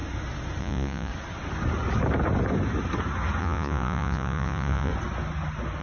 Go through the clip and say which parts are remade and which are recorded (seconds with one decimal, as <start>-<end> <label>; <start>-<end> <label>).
0.0-0.6 recorded; 0.6-1.1 remade; 1.1-3.4 recorded; 3.4-4.9 remade; 4.9-5.8 recorded